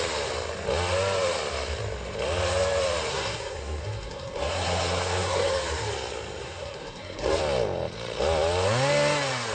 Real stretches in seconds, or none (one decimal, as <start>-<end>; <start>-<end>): 0.0-3.1; 5.5-6.4; 7.4-9.5